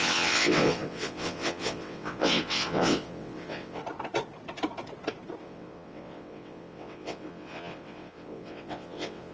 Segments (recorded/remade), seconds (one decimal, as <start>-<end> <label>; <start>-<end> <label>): 0.0-3.8 remade; 3.8-5.4 recorded; 5.4-9.3 remade